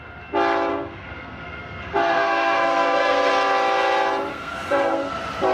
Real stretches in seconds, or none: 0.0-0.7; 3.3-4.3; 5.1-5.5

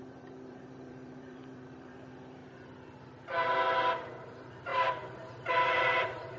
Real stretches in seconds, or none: 2.4-4.1